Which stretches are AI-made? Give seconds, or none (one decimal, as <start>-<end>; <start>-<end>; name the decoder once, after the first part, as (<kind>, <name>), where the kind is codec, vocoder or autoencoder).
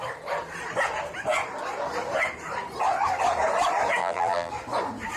4.0-4.5 (vocoder, BigVGAN v2)